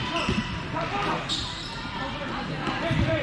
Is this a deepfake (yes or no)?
yes